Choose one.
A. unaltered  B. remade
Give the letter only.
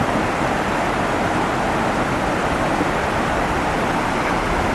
A